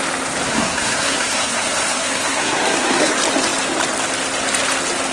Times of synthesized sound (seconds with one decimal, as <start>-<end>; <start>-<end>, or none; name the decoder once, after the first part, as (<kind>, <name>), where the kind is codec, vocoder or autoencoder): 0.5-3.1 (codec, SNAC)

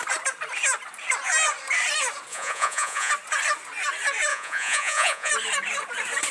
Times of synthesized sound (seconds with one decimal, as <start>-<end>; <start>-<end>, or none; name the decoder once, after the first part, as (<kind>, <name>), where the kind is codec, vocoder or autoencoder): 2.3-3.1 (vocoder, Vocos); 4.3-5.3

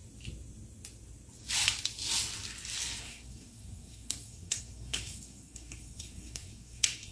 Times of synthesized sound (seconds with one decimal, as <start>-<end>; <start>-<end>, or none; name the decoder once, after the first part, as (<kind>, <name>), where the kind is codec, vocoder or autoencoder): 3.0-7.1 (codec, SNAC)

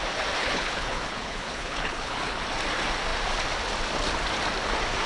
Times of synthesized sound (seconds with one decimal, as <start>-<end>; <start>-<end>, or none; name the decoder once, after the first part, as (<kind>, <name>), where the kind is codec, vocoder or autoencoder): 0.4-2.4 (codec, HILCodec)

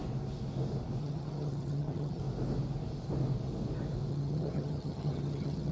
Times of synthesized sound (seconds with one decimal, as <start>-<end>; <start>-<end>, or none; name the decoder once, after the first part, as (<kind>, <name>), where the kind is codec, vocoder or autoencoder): 1.0-2.2 (vocoder, HiFi-GAN); 4.1-5.7